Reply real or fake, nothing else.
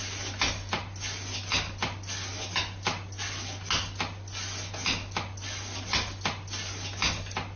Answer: real